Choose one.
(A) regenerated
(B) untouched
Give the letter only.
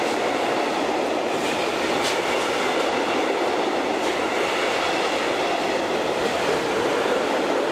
B